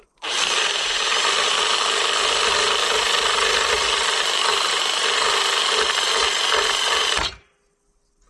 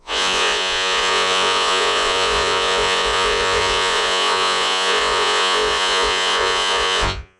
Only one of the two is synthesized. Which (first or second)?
second